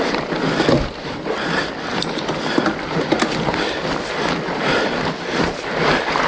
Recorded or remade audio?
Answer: recorded